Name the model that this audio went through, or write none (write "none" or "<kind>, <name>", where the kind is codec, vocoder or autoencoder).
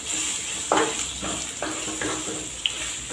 none